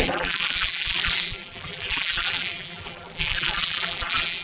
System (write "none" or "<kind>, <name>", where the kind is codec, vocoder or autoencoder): vocoder, BigVGAN v2